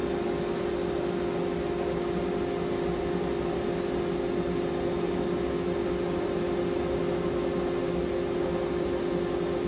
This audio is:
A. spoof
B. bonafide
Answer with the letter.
B